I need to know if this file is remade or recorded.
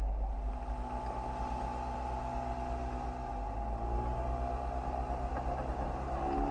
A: recorded